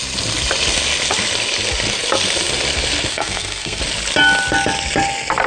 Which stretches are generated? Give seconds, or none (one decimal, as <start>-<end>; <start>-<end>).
3.1-3.8